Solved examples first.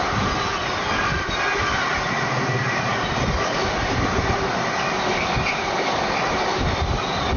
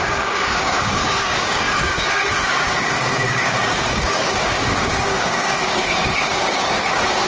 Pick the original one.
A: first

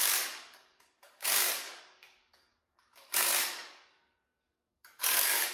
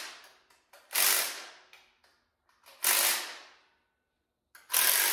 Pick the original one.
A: second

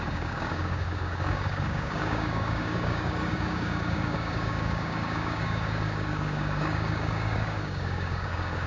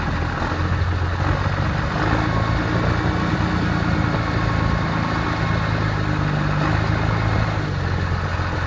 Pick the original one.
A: second